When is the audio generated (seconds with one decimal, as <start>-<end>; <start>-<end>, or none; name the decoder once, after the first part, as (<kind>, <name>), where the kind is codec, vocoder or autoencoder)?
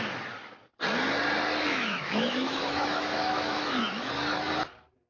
1.7-4.1 (autoencoder, DAC-VAE)